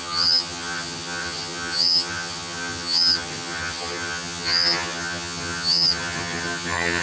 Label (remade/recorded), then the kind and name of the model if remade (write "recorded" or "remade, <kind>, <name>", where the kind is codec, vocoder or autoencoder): remade, vocoder, HiFi-GAN